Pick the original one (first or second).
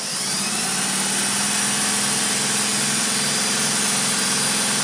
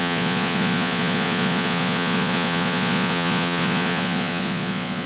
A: first